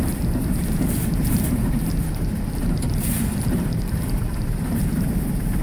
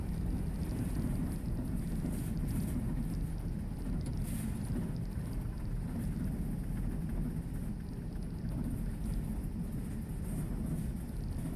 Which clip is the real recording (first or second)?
second